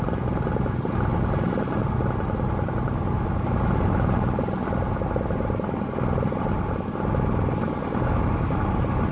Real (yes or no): yes